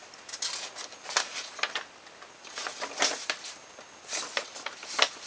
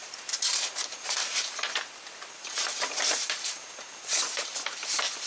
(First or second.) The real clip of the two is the first